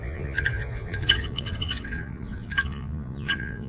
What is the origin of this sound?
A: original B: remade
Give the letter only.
B